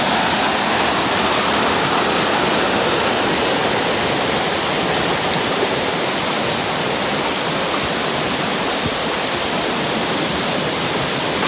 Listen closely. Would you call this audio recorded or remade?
recorded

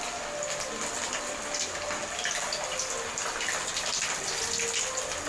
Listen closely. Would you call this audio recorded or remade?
recorded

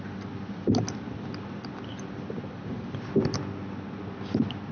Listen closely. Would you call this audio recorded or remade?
recorded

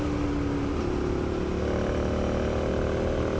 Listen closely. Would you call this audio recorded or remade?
recorded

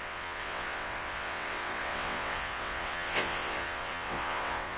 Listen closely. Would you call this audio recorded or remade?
remade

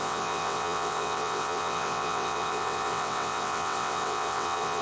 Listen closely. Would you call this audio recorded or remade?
remade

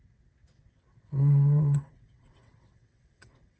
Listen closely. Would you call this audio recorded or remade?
remade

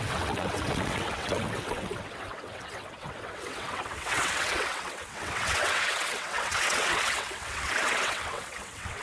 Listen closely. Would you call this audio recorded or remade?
remade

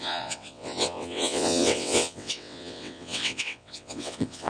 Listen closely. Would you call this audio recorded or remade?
remade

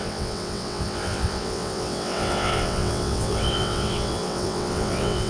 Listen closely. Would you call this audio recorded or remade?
remade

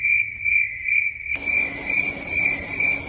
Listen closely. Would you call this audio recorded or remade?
recorded